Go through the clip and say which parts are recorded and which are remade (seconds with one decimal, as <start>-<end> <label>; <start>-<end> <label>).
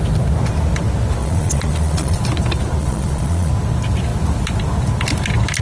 0.0-1.2 recorded; 1.2-2.2 remade; 2.2-2.8 recorded; 2.8-3.5 remade; 3.5-5.6 recorded